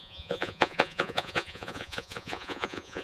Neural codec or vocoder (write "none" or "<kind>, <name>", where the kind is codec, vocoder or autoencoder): vocoder, Vocos